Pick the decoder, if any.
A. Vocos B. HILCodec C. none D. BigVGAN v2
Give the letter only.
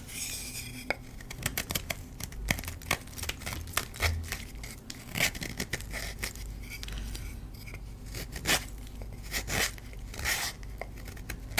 C